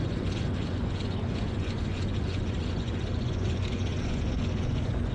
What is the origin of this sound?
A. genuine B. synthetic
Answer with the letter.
B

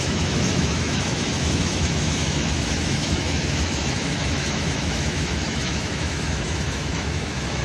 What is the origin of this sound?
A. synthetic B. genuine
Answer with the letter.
A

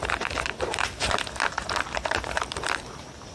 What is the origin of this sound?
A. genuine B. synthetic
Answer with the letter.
B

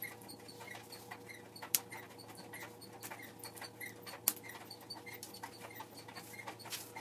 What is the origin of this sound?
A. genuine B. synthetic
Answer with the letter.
A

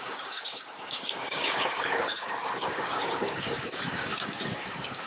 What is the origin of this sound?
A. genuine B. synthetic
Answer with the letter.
B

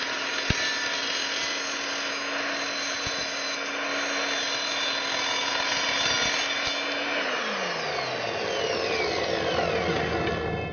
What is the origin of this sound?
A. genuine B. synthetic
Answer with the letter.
A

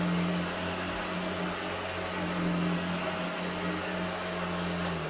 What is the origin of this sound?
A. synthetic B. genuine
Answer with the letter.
B